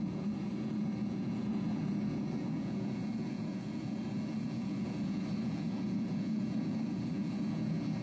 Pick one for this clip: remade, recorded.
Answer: remade